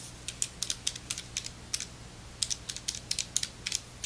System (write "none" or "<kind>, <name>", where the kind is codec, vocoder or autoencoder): none